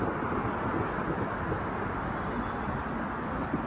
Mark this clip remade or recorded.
recorded